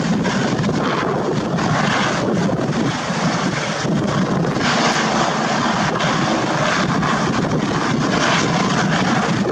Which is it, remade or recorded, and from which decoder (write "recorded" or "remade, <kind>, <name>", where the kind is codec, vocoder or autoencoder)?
recorded